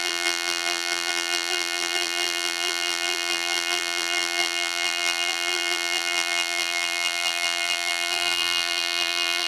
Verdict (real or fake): fake